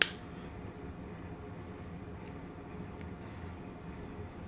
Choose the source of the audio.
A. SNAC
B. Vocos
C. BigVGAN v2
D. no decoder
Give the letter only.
D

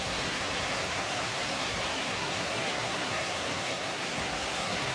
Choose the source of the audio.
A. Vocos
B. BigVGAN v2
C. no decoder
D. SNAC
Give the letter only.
D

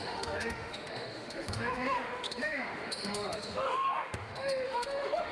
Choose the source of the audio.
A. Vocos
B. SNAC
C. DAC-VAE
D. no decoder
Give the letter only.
C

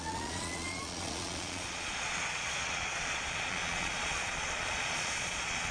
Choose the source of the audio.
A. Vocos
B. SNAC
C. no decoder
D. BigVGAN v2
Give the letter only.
A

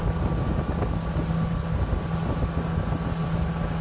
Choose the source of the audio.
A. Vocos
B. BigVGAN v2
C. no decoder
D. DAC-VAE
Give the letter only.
C